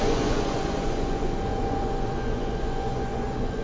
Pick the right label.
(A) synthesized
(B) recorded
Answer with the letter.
A